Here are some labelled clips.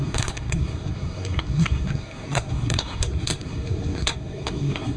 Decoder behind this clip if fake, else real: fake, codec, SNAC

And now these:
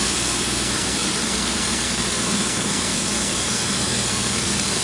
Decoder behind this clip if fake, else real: fake, codec, SNAC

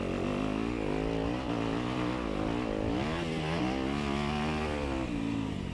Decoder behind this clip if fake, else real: real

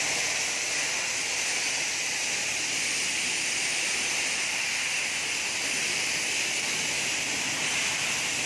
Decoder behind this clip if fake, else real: real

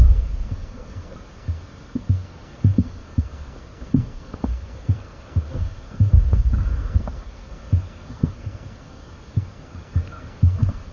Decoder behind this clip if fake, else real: fake, codec, SNAC